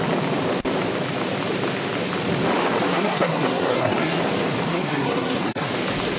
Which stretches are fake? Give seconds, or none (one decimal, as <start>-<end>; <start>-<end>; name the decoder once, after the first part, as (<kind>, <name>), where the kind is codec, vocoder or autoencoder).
2.9-4.2 (codec, SNAC); 4.7-5.7